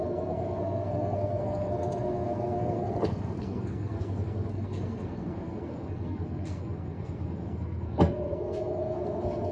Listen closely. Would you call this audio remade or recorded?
remade